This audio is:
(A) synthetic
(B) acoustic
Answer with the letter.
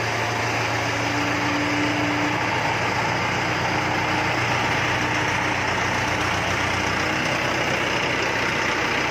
B